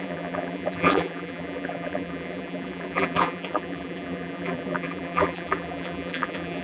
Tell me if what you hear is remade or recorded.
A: remade